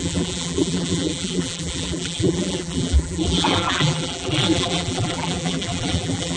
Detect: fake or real fake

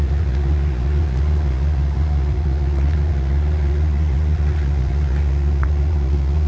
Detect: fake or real fake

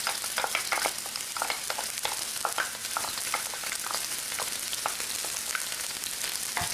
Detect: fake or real real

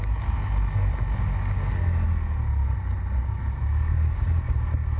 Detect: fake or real real